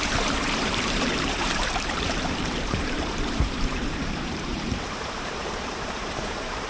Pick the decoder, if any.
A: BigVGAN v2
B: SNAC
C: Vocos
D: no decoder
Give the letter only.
A